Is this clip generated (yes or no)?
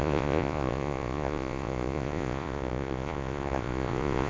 yes